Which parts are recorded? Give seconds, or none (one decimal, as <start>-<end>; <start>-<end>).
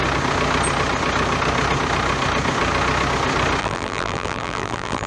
0.0-3.6